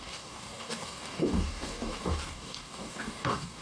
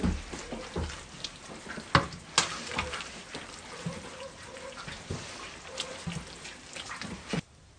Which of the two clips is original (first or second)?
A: second